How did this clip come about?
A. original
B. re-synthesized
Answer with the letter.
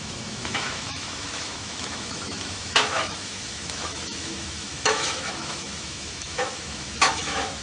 B